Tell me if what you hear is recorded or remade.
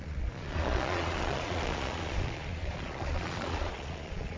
remade